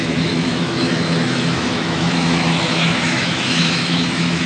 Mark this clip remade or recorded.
remade